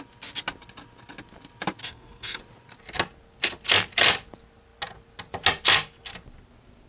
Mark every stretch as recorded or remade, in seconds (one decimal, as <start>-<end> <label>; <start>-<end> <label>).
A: 0.0-1.8 recorded; 1.8-2.4 remade; 2.4-6.9 recorded